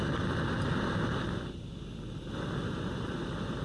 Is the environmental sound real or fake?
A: real